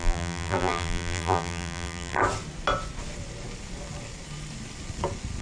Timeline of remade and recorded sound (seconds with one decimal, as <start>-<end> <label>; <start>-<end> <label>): 0.0-2.2 remade; 2.2-5.4 recorded